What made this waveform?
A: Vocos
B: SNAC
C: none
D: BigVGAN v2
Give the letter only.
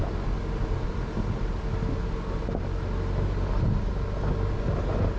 C